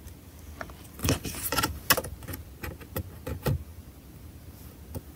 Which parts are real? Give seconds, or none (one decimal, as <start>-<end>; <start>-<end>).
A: 0.0-1.0; 1.9-5.2